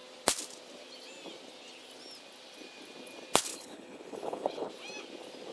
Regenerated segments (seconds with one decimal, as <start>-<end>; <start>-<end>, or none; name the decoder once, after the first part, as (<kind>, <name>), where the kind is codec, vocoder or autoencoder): 3.5-4.7 (codec, HILCodec)